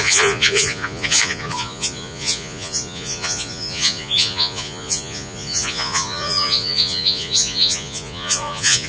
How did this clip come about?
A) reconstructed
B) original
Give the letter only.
A